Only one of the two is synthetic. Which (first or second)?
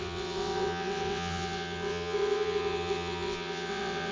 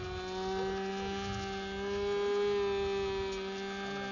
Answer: first